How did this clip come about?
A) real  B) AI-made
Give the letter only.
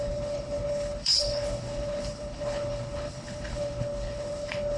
B